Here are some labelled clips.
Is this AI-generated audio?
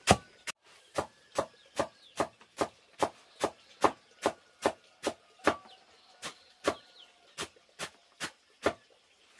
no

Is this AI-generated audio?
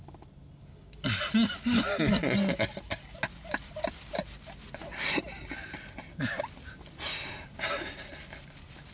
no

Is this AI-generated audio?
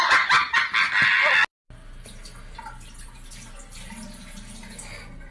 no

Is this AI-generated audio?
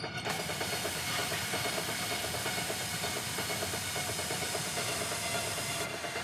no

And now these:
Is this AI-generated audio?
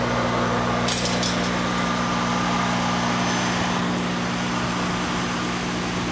no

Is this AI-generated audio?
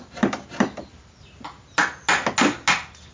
no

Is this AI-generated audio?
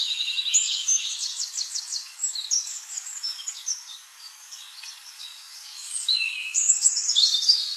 yes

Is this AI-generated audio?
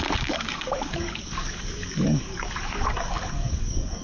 yes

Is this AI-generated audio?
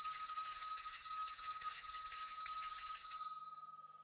yes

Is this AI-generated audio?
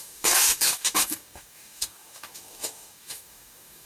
yes